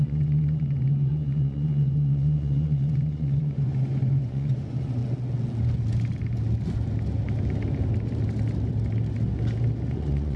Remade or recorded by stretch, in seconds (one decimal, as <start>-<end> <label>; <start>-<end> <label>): 0.0-5.0 remade; 5.0-9.9 recorded; 9.9-10.4 remade